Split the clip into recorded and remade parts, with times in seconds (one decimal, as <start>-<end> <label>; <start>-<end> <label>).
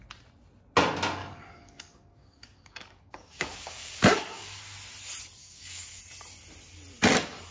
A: 0.0-1.2 recorded; 1.2-4.6 remade; 4.6-5.4 recorded; 5.4-6.0 remade; 6.0-7.5 recorded